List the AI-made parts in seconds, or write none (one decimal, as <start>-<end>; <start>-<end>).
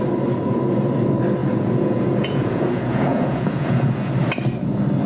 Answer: 1.4-4.1